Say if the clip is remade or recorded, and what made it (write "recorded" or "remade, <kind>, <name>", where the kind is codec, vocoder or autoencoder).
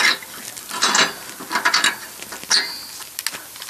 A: recorded